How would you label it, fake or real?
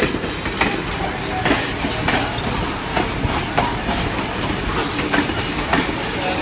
real